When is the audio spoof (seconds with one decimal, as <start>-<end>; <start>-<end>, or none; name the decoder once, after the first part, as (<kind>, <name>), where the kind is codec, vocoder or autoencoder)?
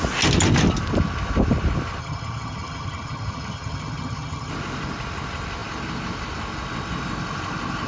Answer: 2.0-4.5 (vocoder, HiFi-GAN)